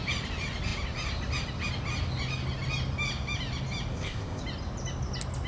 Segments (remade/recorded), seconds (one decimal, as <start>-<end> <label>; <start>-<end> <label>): 0.0-3.9 recorded; 3.9-4.4 remade; 4.4-5.5 recorded